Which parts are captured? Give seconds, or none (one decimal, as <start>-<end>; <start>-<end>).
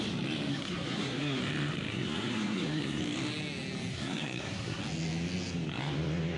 0.0-0.5; 1.4-1.9; 3.0-3.9; 4.8-6.4